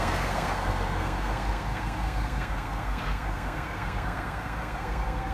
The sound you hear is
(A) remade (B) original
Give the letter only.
A